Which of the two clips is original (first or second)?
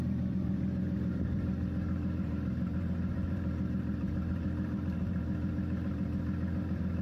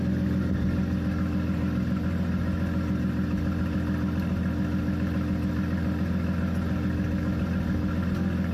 second